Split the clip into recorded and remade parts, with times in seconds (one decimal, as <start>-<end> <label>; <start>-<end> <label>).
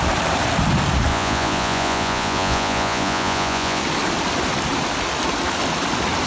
0.0-1.1 recorded; 1.1-3.8 remade; 3.8-6.3 recorded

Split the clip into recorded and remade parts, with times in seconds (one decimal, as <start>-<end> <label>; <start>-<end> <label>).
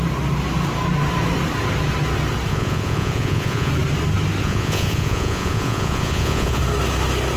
0.0-2.5 recorded; 2.5-3.7 remade; 3.7-4.4 recorded; 4.4-6.6 remade; 6.6-7.4 recorded